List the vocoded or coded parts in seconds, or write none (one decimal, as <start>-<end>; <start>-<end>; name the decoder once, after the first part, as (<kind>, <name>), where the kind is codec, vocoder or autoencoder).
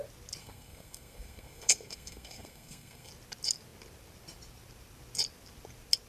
0.4-3.1 (codec, SNAC)